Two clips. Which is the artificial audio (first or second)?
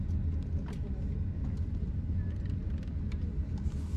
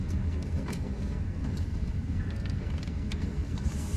second